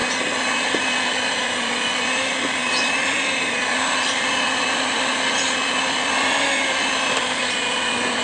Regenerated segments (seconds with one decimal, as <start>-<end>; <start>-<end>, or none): none